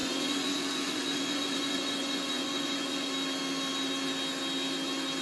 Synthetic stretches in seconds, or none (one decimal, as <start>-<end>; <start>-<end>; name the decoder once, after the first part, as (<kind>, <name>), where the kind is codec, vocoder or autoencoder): 0.0-3.1 (vocoder, Vocos)